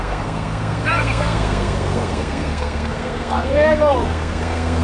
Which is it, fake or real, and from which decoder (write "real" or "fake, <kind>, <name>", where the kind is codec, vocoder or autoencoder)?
fake, codec, SNAC